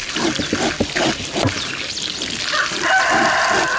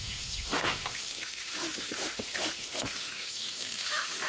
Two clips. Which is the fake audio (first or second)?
second